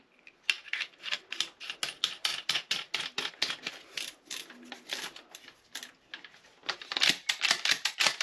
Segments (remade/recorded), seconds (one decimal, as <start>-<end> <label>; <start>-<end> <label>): 0.0-2.3 recorded; 2.3-3.7 remade; 3.7-8.2 recorded